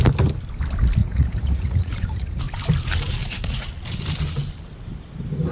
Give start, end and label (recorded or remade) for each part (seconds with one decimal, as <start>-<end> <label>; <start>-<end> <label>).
0.0-1.0 recorded; 1.0-2.4 remade; 2.4-3.2 recorded; 3.2-3.7 remade; 3.7-5.5 recorded